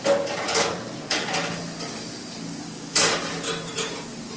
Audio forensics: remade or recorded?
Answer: recorded